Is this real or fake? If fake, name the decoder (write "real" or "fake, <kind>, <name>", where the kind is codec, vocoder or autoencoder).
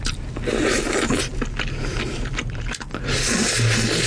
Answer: real